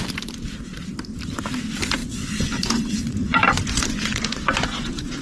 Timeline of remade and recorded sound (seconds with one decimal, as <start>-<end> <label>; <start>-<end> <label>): 0.0-2.0 recorded; 2.0-5.2 remade